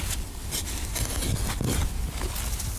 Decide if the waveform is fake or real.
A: real